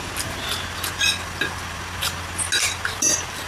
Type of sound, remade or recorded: recorded